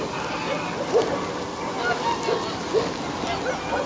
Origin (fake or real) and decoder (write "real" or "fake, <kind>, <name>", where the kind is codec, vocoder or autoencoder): real